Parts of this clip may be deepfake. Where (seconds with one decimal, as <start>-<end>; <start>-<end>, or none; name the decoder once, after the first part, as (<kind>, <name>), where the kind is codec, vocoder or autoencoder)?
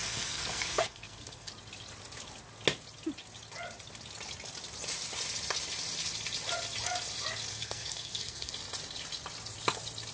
0.0-1.5 (codec, SNAC); 7.5-8.5